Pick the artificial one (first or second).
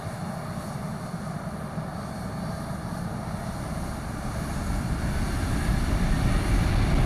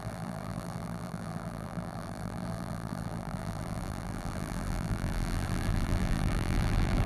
second